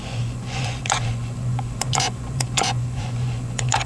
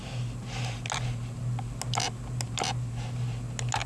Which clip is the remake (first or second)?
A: first